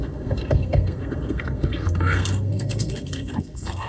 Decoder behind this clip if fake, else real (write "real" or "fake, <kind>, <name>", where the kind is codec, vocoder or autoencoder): fake, codec, SNAC